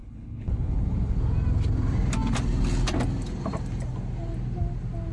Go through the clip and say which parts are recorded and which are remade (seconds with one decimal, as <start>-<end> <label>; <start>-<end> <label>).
0.0-1.2 remade; 1.2-5.1 recorded